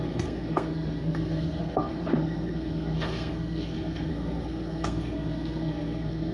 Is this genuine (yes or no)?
no